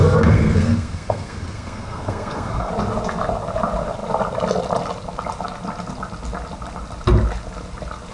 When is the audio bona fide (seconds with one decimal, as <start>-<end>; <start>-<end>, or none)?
2.7-8.1